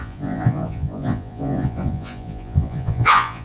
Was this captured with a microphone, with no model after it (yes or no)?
no